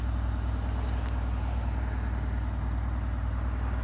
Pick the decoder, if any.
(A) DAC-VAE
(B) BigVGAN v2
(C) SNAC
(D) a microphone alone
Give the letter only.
D